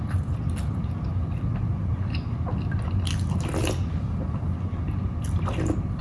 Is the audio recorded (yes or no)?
yes